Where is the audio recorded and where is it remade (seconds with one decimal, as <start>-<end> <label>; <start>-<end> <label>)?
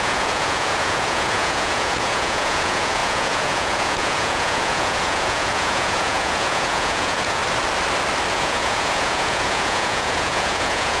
0.0-7.4 remade; 7.4-8.3 recorded; 8.3-11.0 remade